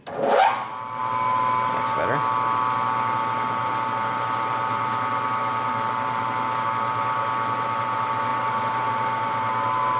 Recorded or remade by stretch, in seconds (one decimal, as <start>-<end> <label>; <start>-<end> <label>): 0.0-10.0 recorded